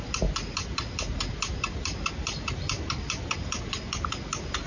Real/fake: real